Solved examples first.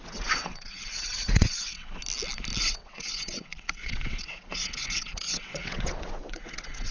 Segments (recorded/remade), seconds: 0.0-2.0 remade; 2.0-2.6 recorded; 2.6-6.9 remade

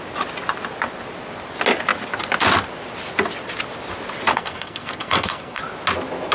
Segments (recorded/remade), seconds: 0.0-4.3 recorded; 4.3-5.6 remade; 5.6-6.3 recorded

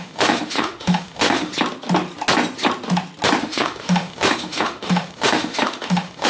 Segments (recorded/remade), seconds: 0.0-1.5 remade; 1.5-3.4 recorded; 3.4-6.3 remade

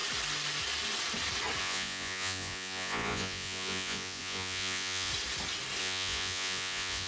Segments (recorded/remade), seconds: 0.0-1.6 recorded; 1.6-5.1 remade; 5.1-5.8 recorded; 5.8-7.1 remade

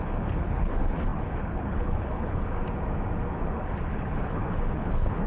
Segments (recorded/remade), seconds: 0.0-2.6 remade; 2.6-3.4 recorded; 3.4-5.3 remade